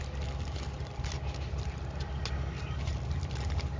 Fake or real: real